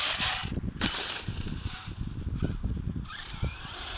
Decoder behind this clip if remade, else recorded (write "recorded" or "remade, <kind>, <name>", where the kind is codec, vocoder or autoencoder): remade, vocoder, BigVGAN v2